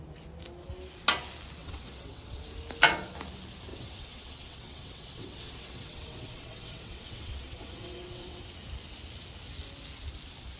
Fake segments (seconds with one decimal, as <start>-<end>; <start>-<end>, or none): 1.6-2.4; 3.7-8.4